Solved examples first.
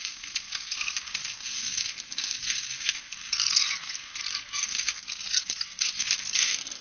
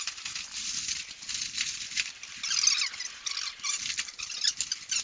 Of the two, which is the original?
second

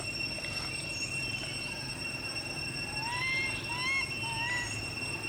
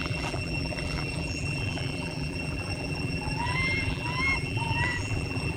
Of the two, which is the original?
first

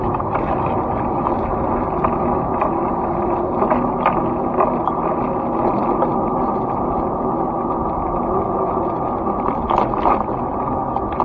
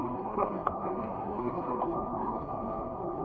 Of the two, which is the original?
first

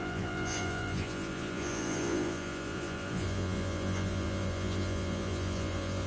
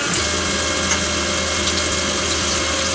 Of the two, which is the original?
second